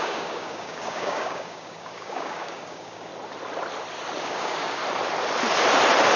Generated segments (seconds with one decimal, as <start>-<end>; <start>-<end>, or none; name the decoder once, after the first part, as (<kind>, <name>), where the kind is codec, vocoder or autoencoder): 0.0-3.1 (codec, DAC); 4.2-4.8